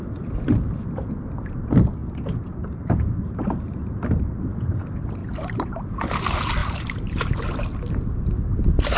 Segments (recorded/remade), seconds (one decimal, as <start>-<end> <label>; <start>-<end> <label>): 0.0-2.0 recorded; 2.0-4.6 remade; 4.6-5.2 recorded; 5.2-5.9 remade; 5.9-6.6 recorded; 6.6-7.2 remade; 7.2-9.0 recorded

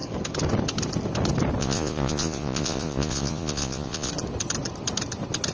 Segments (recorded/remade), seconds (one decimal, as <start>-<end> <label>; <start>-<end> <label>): 0.0-1.6 recorded; 1.6-4.1 remade; 4.1-5.5 recorded